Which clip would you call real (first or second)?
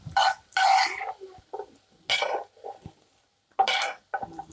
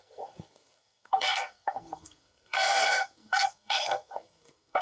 first